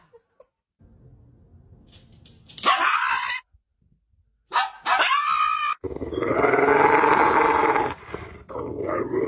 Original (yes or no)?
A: yes